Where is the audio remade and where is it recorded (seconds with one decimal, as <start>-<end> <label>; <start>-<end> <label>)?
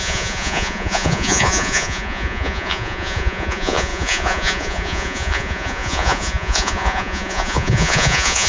0.0-8.5 remade